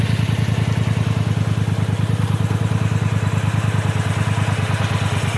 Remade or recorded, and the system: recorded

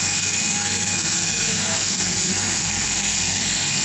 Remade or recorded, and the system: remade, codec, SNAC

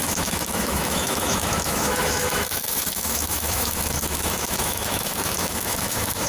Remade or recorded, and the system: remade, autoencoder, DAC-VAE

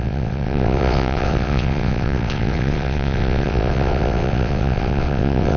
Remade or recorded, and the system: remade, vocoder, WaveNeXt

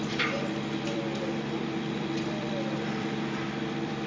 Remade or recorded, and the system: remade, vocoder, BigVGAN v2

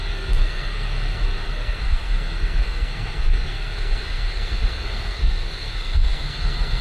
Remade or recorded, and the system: remade, codec, SNAC